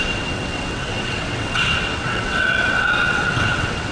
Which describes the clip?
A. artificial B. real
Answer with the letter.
A